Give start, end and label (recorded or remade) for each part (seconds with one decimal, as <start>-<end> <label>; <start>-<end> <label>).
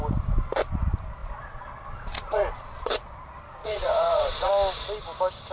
0.0-1.2 recorded; 1.2-3.1 remade; 3.1-3.6 recorded; 3.6-4.5 remade; 4.5-5.5 recorded